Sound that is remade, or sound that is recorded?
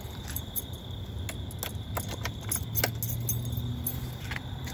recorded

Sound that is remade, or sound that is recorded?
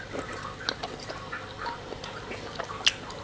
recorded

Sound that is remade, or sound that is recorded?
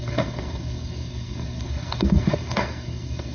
remade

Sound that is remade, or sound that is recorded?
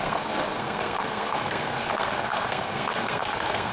remade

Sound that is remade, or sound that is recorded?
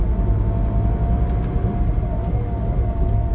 recorded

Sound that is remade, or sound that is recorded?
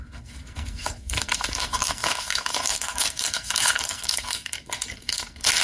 remade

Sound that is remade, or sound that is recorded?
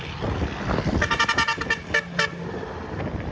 recorded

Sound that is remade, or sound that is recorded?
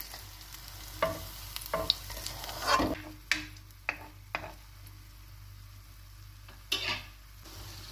recorded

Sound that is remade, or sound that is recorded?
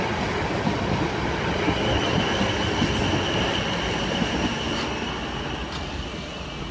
recorded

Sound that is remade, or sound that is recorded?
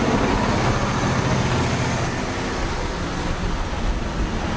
recorded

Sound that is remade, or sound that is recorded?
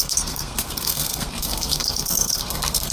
remade